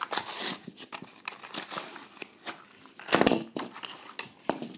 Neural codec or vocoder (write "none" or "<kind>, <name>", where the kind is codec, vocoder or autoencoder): none